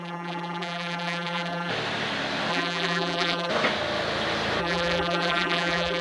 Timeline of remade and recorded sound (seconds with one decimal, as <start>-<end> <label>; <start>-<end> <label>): 0.0-1.7 remade; 1.7-2.5 recorded; 2.5-3.5 remade; 3.5-4.6 recorded; 4.6-6.0 remade